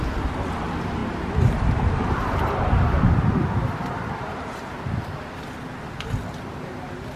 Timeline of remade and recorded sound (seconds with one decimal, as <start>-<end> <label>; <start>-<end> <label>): 0.0-1.0 recorded; 1.0-4.7 remade; 4.7-7.2 recorded